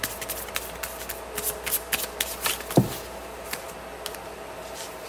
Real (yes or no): yes